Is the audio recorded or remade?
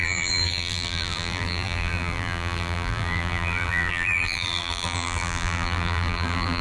remade